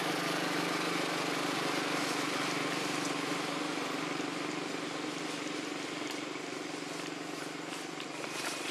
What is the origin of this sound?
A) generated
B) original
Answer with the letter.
B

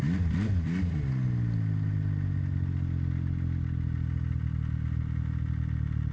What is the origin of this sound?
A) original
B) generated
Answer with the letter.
A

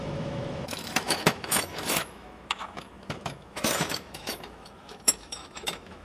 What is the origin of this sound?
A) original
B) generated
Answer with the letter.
B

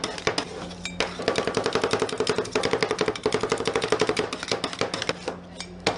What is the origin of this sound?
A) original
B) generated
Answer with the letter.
A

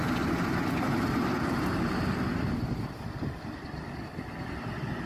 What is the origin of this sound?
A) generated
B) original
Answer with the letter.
B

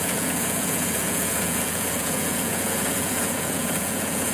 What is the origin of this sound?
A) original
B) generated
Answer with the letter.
B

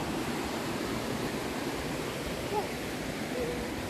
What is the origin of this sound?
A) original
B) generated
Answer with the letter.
A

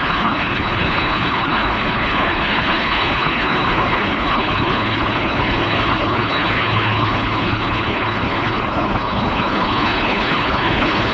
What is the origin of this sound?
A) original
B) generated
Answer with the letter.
B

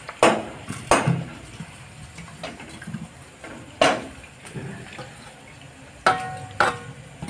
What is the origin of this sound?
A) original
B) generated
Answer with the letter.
A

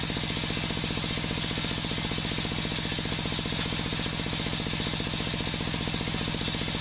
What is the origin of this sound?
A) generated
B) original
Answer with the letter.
B